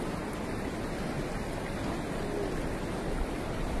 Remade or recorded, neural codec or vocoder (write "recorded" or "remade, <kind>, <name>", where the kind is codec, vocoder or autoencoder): recorded